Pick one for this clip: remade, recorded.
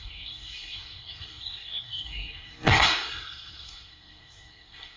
remade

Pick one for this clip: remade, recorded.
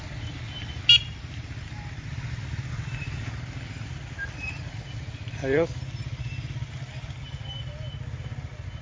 recorded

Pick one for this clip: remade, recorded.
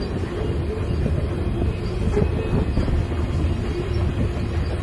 recorded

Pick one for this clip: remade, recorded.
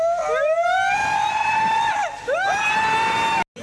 recorded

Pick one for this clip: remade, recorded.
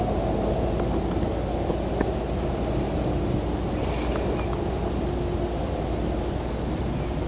recorded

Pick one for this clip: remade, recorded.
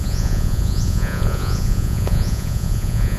remade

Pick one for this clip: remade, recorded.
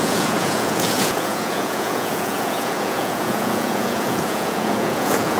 remade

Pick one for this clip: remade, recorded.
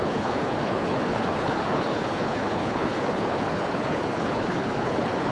remade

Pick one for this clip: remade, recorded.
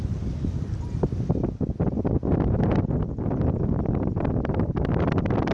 recorded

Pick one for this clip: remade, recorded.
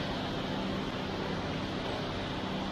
recorded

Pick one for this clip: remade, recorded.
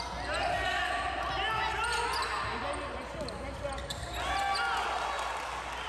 recorded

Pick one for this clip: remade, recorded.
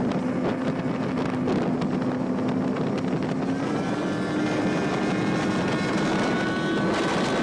recorded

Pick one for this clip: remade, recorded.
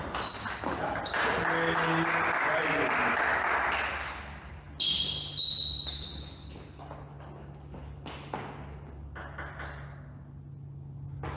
recorded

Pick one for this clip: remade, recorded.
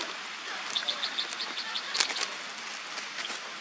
recorded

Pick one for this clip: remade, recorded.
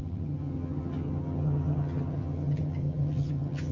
remade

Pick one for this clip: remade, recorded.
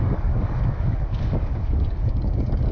remade